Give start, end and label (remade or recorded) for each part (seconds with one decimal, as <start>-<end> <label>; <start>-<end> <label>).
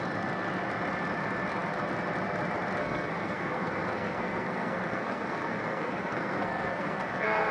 0.0-2.8 recorded; 2.8-7.5 remade